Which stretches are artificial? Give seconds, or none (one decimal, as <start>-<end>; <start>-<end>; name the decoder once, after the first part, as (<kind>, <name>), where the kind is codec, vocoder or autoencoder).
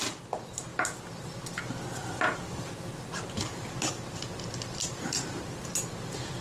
none